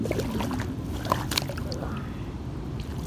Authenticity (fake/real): real